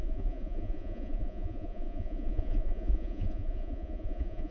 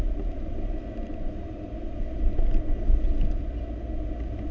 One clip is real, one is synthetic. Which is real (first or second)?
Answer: second